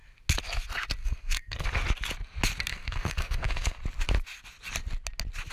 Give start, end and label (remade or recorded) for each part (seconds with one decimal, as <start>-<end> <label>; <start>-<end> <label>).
0.0-1.0 recorded; 1.0-1.7 remade; 1.7-2.7 recorded; 2.7-3.8 remade; 3.8-5.5 recorded